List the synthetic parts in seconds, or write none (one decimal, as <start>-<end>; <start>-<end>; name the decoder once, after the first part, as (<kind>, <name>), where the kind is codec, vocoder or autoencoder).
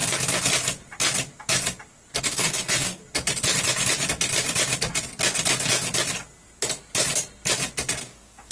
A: 2.2-3.0 (codec, DAC); 8.0-8.5